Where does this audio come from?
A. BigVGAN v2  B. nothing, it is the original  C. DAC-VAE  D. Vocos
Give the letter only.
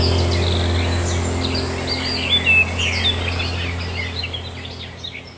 B